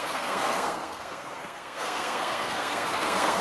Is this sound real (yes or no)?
no